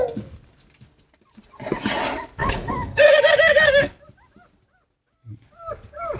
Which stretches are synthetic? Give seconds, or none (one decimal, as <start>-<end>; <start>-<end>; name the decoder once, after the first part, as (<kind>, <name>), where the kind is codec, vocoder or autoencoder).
2.4-3.9 (codec, DAC)